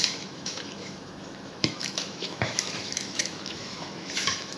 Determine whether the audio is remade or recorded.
remade